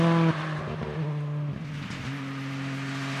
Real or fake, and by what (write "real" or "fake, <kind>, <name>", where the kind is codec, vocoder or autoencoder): real